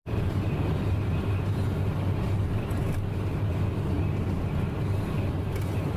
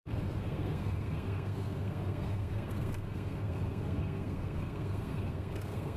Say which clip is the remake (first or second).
second